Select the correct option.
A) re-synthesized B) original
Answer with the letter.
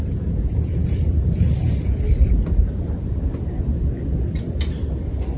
B